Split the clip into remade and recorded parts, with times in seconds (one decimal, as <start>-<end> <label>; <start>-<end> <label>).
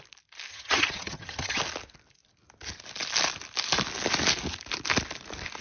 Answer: 0.0-0.5 recorded; 0.5-1.6 remade; 1.6-5.6 recorded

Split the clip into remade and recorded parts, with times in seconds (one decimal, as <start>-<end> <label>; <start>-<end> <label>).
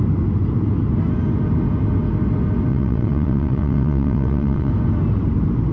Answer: 0.0-2.7 recorded; 2.7-4.7 remade; 4.7-5.7 recorded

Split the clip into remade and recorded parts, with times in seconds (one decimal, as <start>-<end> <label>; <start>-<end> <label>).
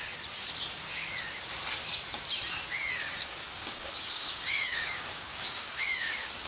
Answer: 0.0-3.0 recorded; 3.0-6.5 remade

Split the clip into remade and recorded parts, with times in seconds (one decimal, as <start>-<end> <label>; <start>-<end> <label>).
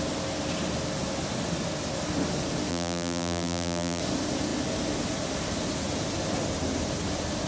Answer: 0.0-2.7 recorded; 2.7-4.0 remade; 4.0-7.5 recorded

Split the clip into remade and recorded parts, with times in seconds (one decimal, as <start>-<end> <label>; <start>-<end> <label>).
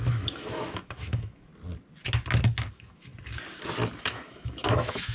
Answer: 0.0-1.5 remade; 1.5-2.7 recorded; 2.7-3.1 remade; 3.1-4.0 recorded; 4.0-5.1 remade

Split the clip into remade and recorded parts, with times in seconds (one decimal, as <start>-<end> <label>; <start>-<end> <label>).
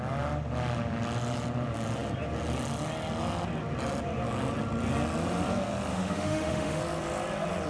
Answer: 0.0-5.9 recorded; 5.9-6.8 remade; 6.8-7.7 recorded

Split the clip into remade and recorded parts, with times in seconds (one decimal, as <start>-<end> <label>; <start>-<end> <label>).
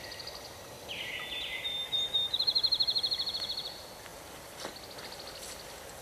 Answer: 0.0-6.0 recorded